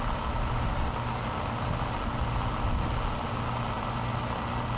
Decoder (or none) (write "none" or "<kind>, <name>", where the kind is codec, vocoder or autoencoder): none